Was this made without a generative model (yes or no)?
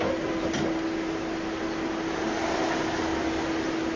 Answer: yes